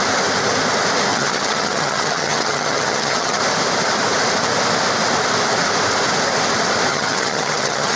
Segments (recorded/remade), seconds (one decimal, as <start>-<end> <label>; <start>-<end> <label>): 0.0-1.1 recorded; 1.1-3.4 remade; 3.4-6.9 recorded; 6.9-8.0 remade